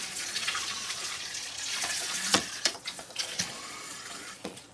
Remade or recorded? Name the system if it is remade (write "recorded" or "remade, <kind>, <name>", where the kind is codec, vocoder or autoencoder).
remade, vocoder, Vocos